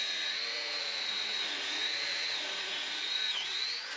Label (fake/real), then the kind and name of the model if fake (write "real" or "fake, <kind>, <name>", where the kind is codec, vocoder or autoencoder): fake, vocoder, Vocos